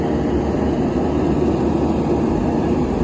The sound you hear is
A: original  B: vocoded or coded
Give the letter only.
A